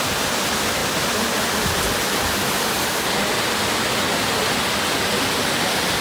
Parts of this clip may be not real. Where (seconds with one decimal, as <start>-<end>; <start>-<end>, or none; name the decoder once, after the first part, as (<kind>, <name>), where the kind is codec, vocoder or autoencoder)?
none